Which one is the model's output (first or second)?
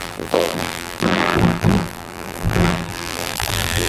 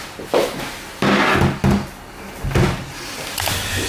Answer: first